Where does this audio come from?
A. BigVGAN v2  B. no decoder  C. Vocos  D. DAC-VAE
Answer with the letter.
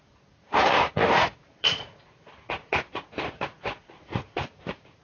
C